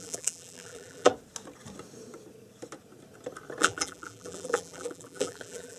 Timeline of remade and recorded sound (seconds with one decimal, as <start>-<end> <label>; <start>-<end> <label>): 0.0-1.1 remade; 1.1-3.6 recorded; 3.6-5.8 remade